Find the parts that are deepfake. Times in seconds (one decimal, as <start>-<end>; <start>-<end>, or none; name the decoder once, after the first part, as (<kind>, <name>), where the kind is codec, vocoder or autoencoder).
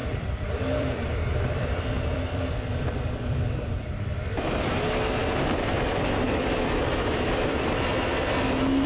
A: 0.0-4.0 (vocoder, BigVGAN v2); 5.2-7.9